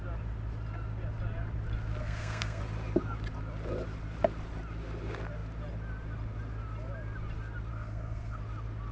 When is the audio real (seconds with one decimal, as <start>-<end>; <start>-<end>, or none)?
0.0-2.0; 2.6-7.7; 8.4-8.9